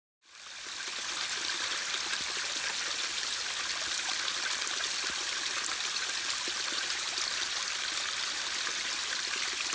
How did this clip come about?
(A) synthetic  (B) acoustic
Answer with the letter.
B